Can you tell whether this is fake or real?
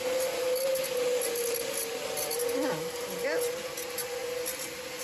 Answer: real